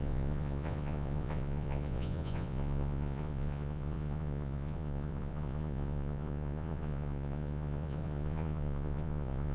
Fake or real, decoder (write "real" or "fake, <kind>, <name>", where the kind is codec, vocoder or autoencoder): fake, vocoder, Vocos